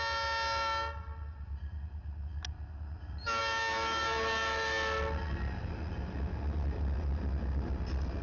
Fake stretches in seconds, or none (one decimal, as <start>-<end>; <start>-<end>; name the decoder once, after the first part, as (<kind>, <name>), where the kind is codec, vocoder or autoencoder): none